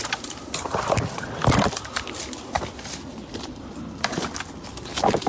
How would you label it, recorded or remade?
recorded